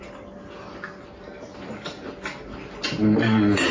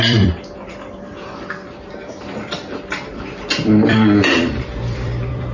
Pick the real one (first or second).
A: first